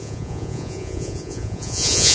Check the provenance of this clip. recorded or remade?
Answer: remade